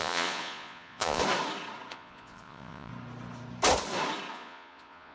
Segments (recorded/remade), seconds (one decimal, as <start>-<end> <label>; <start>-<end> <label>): 0.0-1.2 remade; 1.2-1.9 recorded; 1.9-2.9 remade; 2.9-4.3 recorded; 4.3-5.1 remade